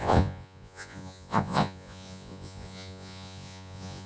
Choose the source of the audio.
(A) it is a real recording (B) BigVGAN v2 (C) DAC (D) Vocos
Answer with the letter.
D